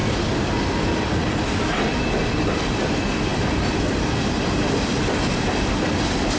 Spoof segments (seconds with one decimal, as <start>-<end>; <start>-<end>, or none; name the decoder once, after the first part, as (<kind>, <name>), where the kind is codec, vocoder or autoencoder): 2.3-3.3 (vocoder, BigVGAN v2)